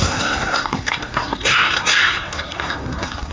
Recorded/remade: remade